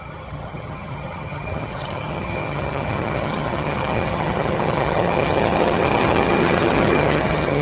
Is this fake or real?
fake